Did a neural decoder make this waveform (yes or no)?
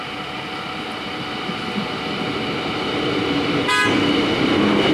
no